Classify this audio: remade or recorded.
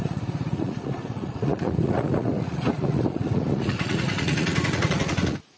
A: remade